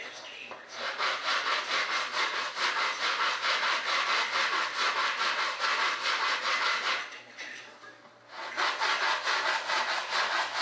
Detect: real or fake real